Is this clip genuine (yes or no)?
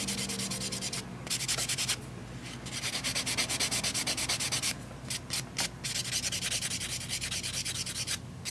yes